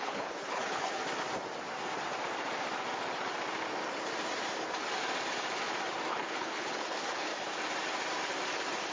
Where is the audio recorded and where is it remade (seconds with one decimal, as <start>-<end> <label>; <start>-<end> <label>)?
0.0-1.0 remade; 1.0-6.1 recorded; 6.1-7.3 remade; 7.3-8.9 recorded